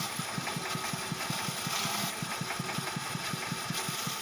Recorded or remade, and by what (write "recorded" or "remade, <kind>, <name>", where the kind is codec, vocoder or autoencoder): recorded